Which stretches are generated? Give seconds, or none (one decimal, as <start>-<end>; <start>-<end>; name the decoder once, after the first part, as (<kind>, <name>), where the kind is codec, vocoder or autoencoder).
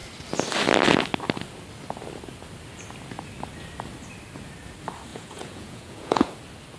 5.1-6.3 (vocoder, Vocos)